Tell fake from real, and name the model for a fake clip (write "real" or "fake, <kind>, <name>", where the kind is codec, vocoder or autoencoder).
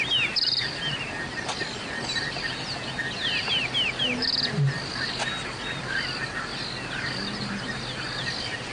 real